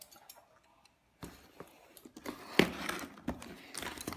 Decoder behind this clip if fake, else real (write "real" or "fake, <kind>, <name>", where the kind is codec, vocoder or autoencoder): real